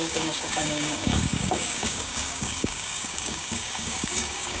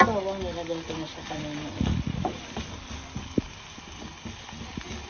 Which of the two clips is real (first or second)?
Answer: second